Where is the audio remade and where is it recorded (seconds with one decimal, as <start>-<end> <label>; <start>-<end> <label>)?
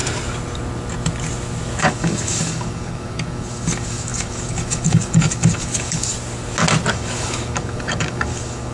0.0-1.8 recorded; 1.8-6.1 remade; 6.1-6.9 recorded; 6.9-8.7 remade